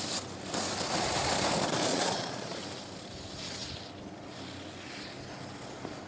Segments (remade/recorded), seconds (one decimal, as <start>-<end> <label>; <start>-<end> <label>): 0.0-1.9 recorded; 1.9-2.6 remade; 2.6-6.1 recorded